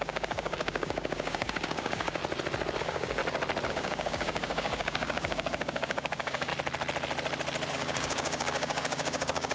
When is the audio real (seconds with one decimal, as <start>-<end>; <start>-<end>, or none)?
2.2-2.8; 3.2-3.7; 6.5-7.7